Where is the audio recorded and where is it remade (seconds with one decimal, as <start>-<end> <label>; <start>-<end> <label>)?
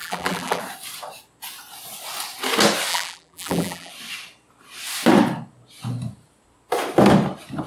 0.0-0.6 remade; 0.6-2.9 recorded; 2.9-3.9 remade; 3.9-7.7 recorded